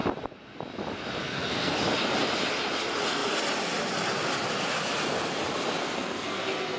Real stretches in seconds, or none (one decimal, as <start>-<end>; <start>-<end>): 0.0-1.2; 1.8-5.8